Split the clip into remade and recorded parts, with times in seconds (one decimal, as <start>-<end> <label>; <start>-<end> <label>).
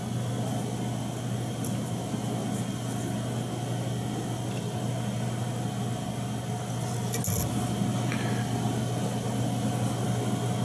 0.0-10.6 recorded